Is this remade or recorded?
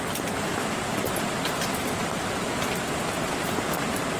remade